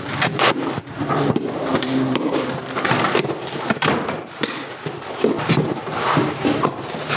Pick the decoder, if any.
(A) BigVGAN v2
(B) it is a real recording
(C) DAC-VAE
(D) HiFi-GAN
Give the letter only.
A